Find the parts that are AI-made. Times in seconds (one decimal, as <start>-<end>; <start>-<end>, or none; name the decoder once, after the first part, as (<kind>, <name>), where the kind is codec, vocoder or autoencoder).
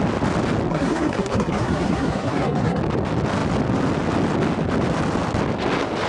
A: 0.7-2.8 (codec, SNAC)